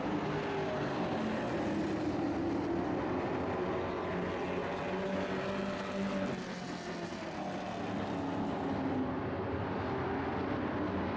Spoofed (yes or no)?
no